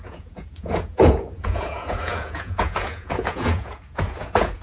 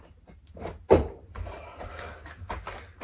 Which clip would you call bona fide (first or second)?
second